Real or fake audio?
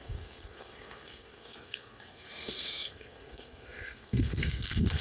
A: fake